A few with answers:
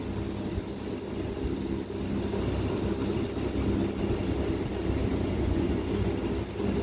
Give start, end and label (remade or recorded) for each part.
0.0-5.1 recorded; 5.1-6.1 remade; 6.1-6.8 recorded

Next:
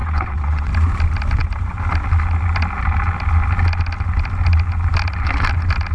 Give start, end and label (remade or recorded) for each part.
0.0-0.7 remade; 0.7-5.9 recorded

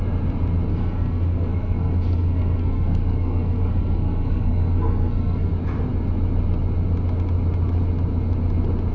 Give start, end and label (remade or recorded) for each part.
0.0-0.7 recorded; 0.7-5.5 remade; 5.5-8.9 recorded

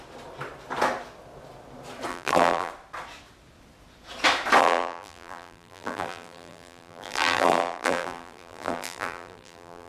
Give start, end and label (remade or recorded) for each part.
0.0-2.1 recorded; 2.1-2.7 remade; 2.7-4.6 recorded; 4.6-9.9 remade

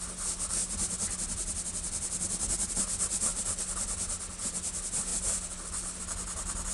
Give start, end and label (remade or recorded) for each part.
0.0-5.1 recorded; 5.1-6.0 remade; 6.0-6.7 recorded

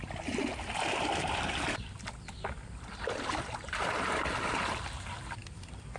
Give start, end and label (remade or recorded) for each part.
0.0-6.0 recorded